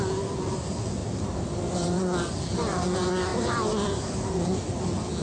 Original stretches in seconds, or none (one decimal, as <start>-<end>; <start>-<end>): 0.0-1.0; 2.3-5.2